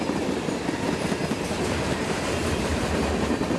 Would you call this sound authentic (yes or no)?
no